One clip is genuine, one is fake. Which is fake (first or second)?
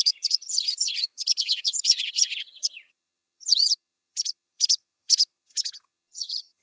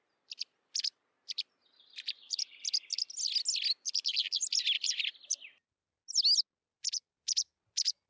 first